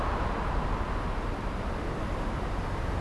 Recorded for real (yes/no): yes